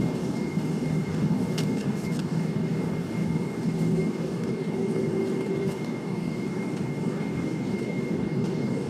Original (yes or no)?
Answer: no